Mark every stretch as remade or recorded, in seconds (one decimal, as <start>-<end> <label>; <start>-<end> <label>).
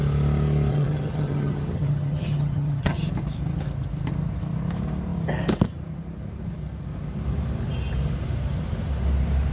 0.0-0.7 recorded; 0.7-3.1 remade; 3.1-9.5 recorded